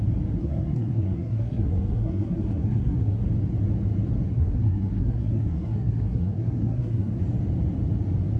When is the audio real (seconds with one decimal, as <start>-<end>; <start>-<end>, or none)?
0.0-0.4; 3.2-4.3; 7.2-8.4